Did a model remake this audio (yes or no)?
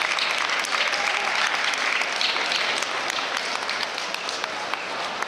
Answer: no